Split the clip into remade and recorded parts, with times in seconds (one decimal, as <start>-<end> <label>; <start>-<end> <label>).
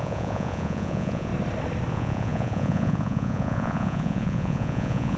0.0-1.3 remade; 1.3-1.9 recorded; 1.9-5.2 remade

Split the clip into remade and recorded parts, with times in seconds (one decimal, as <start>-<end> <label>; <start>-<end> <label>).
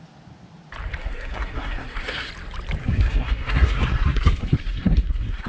0.0-1.0 recorded; 1.0-2.3 remade; 2.3-2.8 recorded; 2.8-5.5 remade